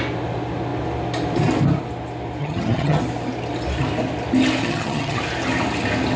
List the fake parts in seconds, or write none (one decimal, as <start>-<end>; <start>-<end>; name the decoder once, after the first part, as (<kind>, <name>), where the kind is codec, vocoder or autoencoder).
2.4-3.0 (vocoder, HiFi-GAN); 4.6-5.2